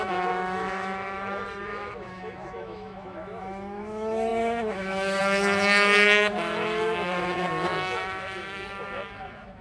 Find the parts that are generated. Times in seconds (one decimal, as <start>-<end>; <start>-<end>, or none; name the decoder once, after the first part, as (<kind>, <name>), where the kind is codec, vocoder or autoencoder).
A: 0.0-9.6 (autoencoder, DAC-VAE)